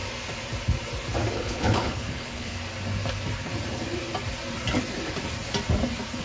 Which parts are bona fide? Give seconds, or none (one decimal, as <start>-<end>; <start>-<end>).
0.0-1.3; 2.6-6.2